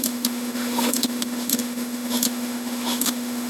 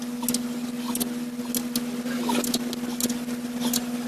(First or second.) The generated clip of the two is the first